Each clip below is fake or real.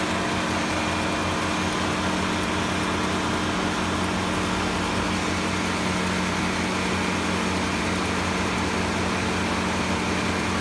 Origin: real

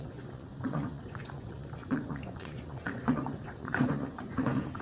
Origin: fake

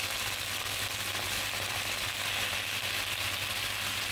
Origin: real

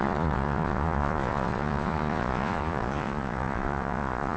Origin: fake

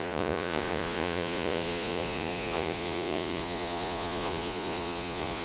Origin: fake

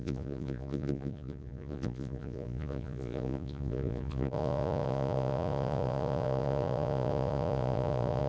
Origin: fake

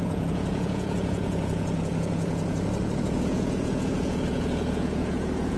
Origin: fake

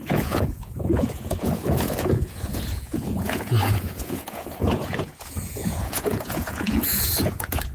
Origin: fake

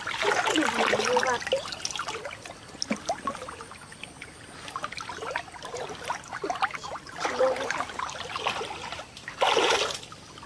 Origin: real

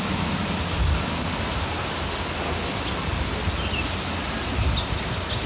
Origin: real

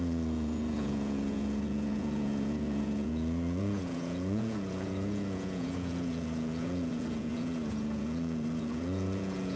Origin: fake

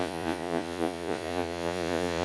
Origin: fake